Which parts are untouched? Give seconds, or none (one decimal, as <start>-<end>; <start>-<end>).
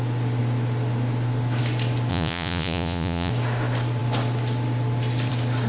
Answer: 0.0-2.1; 3.3-5.7